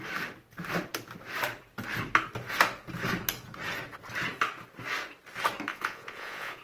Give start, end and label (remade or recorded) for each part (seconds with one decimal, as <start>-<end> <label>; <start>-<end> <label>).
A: 0.0-5.7 recorded; 5.7-6.6 remade